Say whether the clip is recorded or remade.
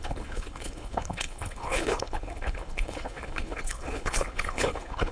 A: remade